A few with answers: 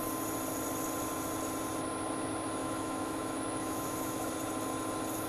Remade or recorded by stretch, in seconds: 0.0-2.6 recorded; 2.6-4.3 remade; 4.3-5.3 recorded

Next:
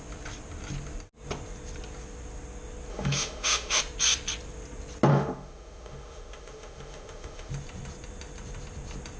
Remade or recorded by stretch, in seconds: 0.0-2.9 recorded; 2.9-3.8 remade; 3.8-5.1 recorded; 5.1-7.5 remade; 7.5-9.2 recorded

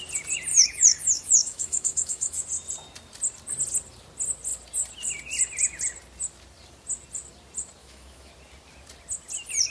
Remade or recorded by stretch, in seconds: 0.0-0.5 recorded; 0.5-2.4 remade; 2.4-7.8 recorded; 7.8-8.3 remade; 8.3-9.7 recorded

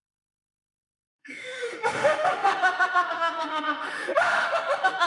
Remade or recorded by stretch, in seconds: 0.0-5.1 remade

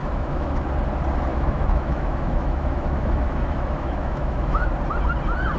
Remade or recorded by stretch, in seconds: 0.0-0.7 remade; 0.7-1.3 recorded; 1.3-4.7 remade; 4.7-5.6 recorded